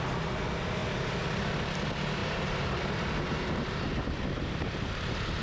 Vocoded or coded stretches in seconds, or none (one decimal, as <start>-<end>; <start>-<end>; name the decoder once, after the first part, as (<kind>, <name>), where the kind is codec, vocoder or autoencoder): 2.2-5.4 (vocoder, BigVGAN v2)